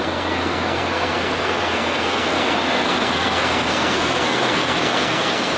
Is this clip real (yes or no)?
no